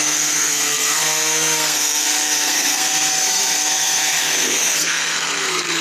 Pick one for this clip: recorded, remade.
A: remade